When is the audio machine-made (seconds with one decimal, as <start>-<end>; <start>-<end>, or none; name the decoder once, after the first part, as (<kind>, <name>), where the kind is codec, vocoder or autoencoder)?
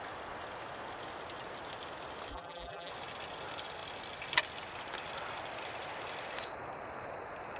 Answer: 2.3-2.9 (vocoder, BigVGAN v2)